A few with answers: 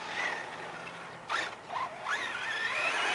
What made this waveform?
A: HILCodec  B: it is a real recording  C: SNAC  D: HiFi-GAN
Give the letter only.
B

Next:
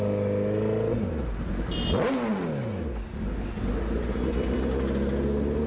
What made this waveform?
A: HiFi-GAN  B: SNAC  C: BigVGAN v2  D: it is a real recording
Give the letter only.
D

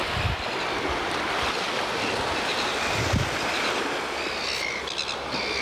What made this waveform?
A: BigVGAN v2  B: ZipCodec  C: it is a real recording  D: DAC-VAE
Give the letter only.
C